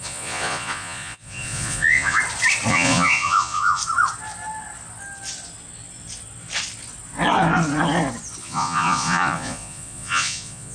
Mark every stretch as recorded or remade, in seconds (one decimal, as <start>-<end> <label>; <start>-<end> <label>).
0.0-2.2 remade; 2.2-2.7 recorded; 2.7-3.8 remade; 3.8-8.4 recorded; 8.4-10.7 remade